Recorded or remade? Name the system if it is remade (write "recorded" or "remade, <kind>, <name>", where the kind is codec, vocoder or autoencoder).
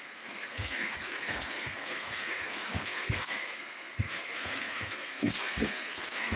remade, codec, SNAC